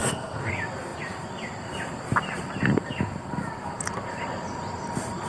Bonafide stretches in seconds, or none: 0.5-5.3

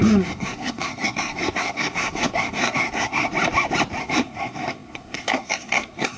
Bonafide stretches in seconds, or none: 3.3-4.0

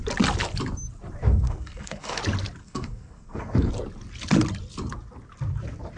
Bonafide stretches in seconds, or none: 0.0-1.3; 2.2-2.6; 3.7-6.0